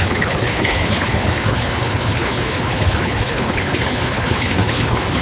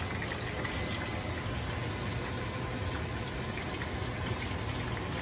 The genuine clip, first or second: second